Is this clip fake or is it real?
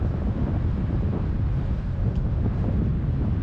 fake